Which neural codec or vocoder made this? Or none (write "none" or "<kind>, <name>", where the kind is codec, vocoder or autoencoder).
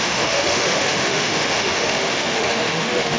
autoencoder, DAC-VAE